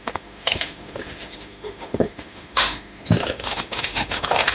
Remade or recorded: remade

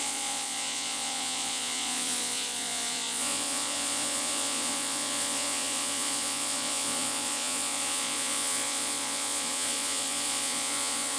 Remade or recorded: remade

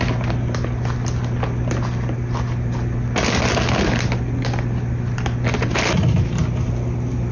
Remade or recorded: recorded